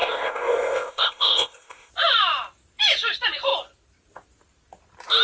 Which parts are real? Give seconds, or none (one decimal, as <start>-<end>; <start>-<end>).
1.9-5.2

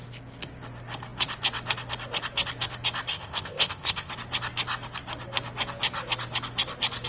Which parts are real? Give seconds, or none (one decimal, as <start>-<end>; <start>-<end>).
0.0-3.1; 4.1-7.1

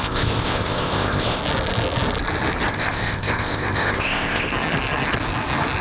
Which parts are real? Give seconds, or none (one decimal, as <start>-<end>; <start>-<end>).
1.4-2.7; 4.5-5.8